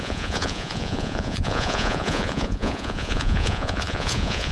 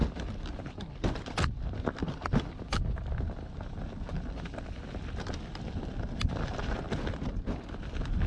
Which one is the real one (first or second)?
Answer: second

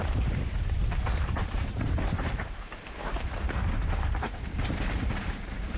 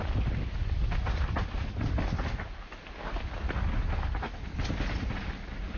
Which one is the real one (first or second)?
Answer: second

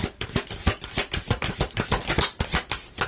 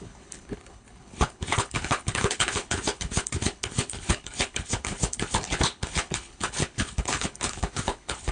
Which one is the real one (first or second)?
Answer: first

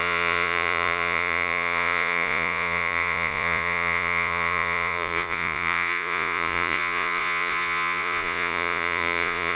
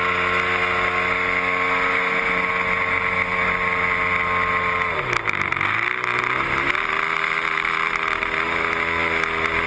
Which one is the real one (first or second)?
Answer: second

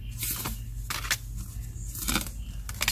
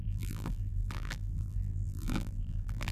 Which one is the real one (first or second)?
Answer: first